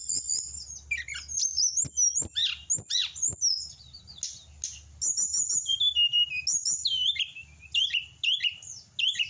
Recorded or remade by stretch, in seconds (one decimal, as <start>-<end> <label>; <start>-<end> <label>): 0.0-9.3 recorded